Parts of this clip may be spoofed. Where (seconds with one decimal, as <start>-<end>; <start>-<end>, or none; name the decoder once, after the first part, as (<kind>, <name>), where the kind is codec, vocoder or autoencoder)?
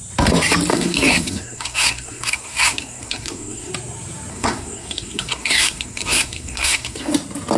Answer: 0.7-3.7 (codec, SNAC); 4.3-7.1